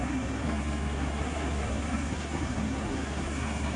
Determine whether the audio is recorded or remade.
remade